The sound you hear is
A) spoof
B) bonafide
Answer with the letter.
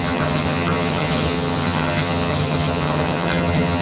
A